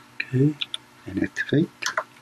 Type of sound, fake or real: real